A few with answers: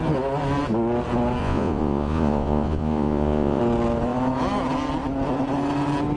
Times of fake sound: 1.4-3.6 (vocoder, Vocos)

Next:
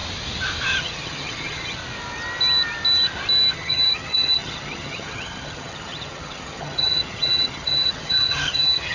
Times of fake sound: 0.8-1.8 (vocoder, HiFi-GAN); 3.5-8.9

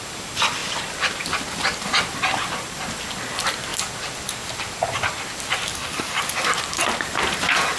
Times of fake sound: 5.7-6.2 (codec, DAC)